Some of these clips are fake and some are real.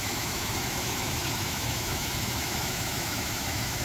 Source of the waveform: fake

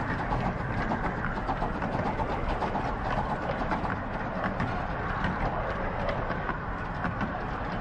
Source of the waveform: real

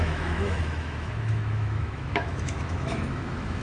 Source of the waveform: fake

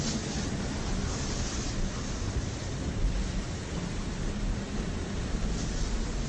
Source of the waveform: real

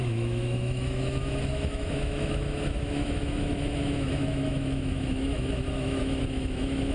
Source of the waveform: fake